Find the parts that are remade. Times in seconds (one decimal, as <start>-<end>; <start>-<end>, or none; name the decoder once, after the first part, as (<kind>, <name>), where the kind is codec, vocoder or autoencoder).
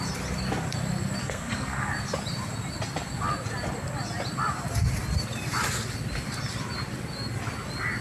1.2-1.9 (codec, SNAC)